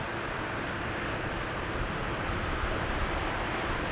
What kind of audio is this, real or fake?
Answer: real